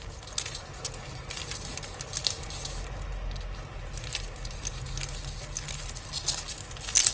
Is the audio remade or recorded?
recorded